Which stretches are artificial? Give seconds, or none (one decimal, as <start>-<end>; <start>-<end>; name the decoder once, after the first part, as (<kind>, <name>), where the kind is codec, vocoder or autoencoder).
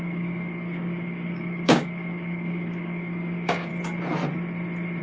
0.0-3.7 (codec, DAC)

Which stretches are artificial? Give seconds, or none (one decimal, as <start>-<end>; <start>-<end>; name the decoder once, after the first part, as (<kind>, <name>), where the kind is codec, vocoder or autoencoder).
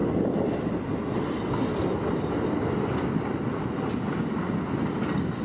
none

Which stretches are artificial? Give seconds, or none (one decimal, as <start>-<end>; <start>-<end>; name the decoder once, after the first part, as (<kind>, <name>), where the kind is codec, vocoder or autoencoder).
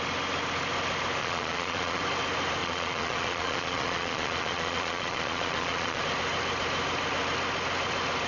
1.2-2.0 (vocoder, Vocos); 2.6-6.0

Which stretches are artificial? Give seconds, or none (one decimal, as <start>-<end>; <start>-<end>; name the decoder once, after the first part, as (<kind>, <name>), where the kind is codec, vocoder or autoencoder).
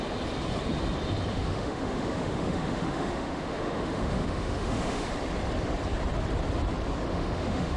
1.3-5.1 (autoencoder, DAC-VAE); 7.1-7.8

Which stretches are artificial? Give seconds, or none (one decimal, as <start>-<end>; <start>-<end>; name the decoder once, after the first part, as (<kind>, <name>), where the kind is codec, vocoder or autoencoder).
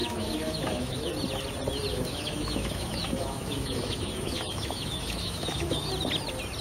0.0-1.1 (autoencoder, DAC-VAE); 1.9-5.9